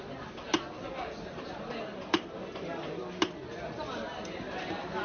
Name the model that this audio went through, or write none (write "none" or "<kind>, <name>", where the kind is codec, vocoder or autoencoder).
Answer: none